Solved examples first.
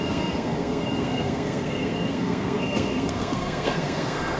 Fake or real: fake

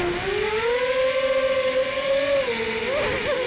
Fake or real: real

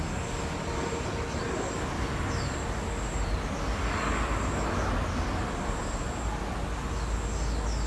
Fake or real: real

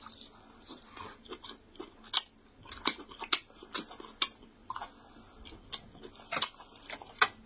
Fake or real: real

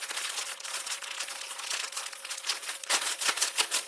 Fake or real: fake